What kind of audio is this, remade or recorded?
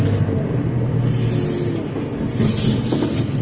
recorded